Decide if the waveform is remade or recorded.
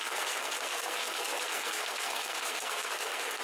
remade